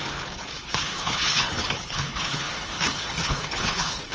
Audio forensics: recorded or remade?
remade